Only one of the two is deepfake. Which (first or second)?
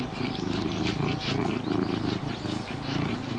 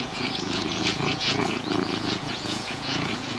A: second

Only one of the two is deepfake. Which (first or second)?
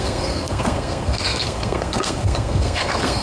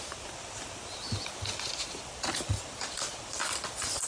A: first